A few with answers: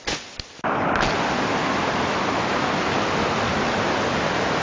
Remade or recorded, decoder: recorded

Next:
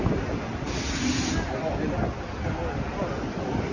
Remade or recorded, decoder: recorded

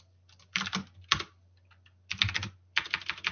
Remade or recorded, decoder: remade, vocoder, BigVGAN v2